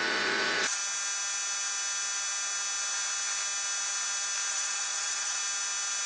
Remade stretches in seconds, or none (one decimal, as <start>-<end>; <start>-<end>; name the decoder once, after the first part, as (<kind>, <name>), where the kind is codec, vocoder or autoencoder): 0.0-0.8 (vocoder, Vocos); 4.5-5.4